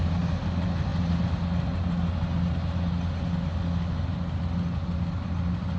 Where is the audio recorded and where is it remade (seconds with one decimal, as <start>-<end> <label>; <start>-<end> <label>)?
0.0-5.8 recorded